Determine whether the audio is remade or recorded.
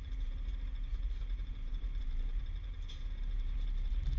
remade